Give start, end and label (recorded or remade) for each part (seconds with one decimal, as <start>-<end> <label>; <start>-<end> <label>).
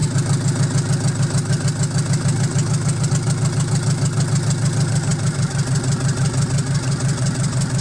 0.0-7.8 recorded